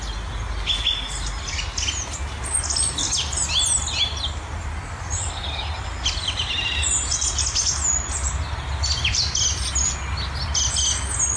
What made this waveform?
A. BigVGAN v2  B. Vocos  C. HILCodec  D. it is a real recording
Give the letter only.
D